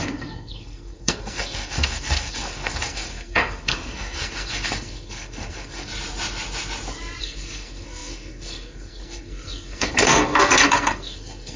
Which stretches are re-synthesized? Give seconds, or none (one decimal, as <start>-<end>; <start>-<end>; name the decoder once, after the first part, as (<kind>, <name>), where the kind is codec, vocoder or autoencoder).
0.0-5.9 (codec, SNAC); 7.2-11.6